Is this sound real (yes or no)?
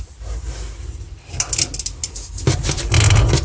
yes